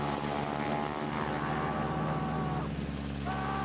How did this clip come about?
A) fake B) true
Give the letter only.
B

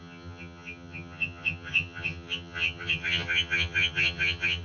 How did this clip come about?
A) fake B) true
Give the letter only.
A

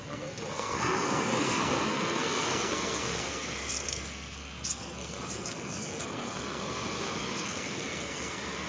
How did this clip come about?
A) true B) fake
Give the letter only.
B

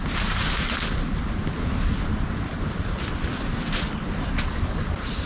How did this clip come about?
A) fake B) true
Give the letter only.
B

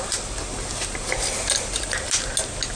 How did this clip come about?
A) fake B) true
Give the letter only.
B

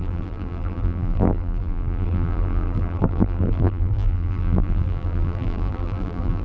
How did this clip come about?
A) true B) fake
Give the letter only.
B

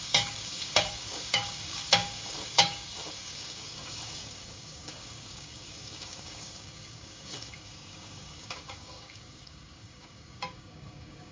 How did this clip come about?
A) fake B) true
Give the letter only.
A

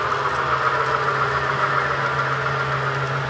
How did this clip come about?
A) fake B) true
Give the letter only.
B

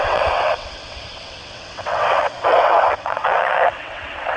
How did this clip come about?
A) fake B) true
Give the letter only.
A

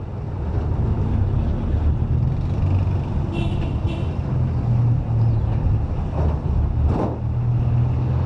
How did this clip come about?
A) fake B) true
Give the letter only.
B